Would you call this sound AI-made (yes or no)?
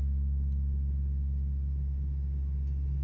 no